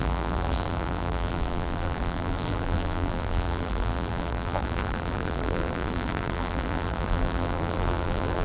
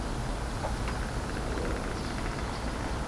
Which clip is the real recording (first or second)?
second